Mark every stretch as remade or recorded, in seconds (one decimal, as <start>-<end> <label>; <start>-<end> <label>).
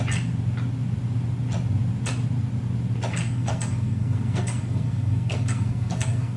0.0-3.1 recorded; 3.1-6.4 remade